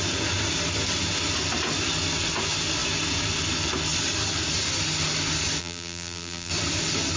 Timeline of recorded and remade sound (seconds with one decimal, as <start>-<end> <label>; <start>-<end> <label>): 0.0-5.6 recorded; 5.6-6.5 remade; 6.5-7.2 recorded